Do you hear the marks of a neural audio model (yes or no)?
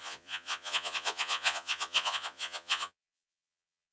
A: yes